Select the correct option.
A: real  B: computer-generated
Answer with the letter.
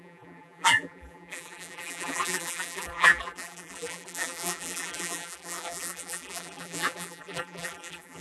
B